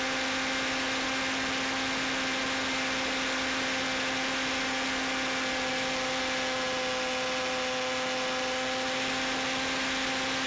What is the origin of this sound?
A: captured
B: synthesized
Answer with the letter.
A